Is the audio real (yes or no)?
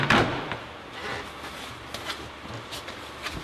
yes